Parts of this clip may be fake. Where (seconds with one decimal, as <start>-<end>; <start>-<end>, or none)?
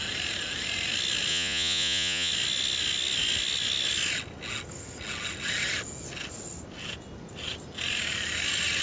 1.3-2.3